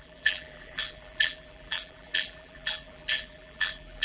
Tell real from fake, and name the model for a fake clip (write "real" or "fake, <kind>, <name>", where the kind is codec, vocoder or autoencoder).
fake, vocoder, BigVGAN v2